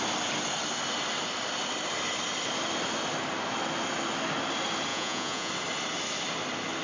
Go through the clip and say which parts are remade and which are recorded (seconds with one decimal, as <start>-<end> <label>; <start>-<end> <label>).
0.0-4.9 recorded; 4.9-5.5 remade; 5.5-6.8 recorded